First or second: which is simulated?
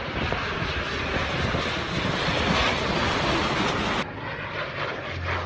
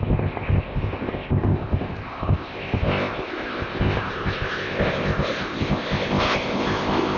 second